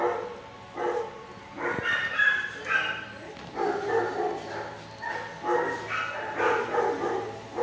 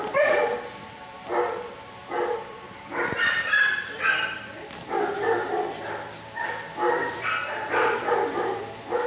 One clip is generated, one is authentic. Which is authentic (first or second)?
first